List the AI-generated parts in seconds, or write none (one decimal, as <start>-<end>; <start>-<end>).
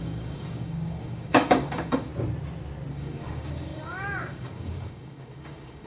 0.0-2.1; 2.9-5.9